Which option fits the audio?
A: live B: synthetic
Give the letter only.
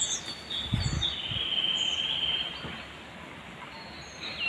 A